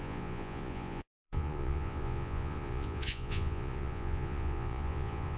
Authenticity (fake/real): fake